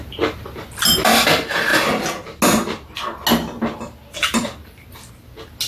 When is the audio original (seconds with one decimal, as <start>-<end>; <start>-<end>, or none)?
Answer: 0.0-5.7